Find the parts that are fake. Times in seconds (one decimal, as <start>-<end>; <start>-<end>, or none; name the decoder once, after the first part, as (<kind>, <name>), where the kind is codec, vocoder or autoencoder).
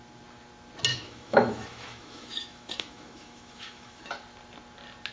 0.9-4.0 (autoencoder, DAC-VAE)